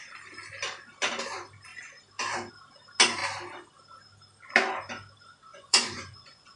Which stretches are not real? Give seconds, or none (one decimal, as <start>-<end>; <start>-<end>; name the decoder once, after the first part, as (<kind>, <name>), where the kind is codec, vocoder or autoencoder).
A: 5.5-6.6 (vocoder, Vocos)

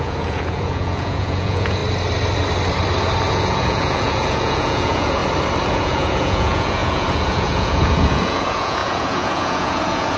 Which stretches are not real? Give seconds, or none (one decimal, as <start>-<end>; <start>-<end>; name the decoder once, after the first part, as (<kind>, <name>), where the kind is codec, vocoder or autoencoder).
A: 0.0-1.8 (vocoder, Vocos); 3.3-5.2; 5.7-10.2

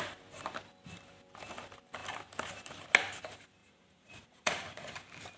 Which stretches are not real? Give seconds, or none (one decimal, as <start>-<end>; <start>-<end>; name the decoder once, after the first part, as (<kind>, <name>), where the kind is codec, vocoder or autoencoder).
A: 3.6-4.9 (vocoder, Vocos)

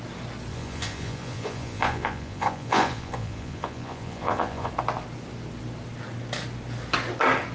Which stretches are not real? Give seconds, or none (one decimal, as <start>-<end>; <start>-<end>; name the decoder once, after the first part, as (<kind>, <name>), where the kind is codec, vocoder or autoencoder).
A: 0.5-4.7 (vocoder, Vocos)

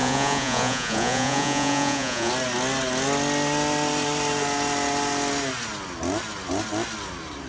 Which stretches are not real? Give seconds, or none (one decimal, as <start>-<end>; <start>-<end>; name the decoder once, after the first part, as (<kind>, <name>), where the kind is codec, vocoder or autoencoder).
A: 0.0-2.3 (vocoder, Vocos)

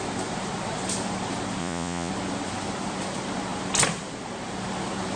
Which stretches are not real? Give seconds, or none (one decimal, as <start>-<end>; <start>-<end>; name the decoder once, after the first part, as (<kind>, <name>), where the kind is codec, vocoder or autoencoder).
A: 1.6-2.1 (vocoder, Vocos)